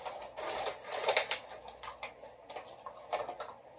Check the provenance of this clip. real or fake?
real